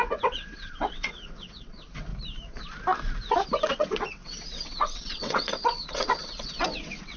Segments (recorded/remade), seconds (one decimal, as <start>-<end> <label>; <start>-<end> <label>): 0.0-2.1 remade; 2.1-3.7 recorded; 3.7-7.2 remade

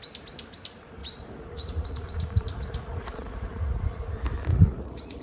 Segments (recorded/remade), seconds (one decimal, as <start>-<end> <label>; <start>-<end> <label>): 0.0-1.0 recorded; 1.0-4.1 remade; 4.1-4.5 recorded; 4.5-5.2 remade

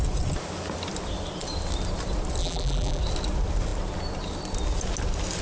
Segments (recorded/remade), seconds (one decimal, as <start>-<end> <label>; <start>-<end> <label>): 0.0-2.4 recorded; 2.4-3.0 remade; 3.0-5.4 recorded